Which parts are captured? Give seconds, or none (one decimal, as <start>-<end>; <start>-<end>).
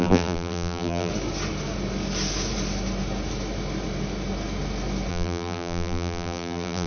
1.1-5.1